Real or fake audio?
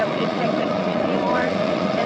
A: fake